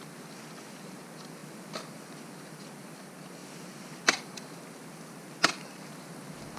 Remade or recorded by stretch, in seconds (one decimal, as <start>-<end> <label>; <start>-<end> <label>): 0.0-6.6 recorded